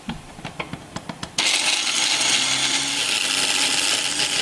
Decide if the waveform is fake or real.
real